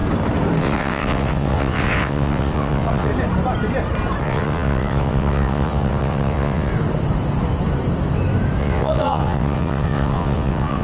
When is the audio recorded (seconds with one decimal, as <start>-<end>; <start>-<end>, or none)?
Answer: 0.0-0.6; 3.1-4.2; 6.7-8.6

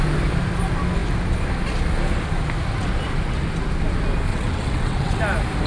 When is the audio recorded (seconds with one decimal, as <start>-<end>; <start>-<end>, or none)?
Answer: 0.0-4.3; 5.2-5.7